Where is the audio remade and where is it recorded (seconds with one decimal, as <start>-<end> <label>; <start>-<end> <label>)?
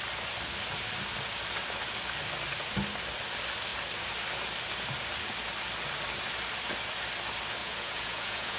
0.0-7.6 recorded; 7.6-8.6 remade